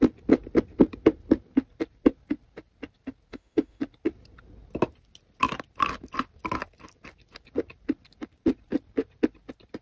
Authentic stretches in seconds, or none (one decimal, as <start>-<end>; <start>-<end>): 0.0-3.3; 3.8-9.8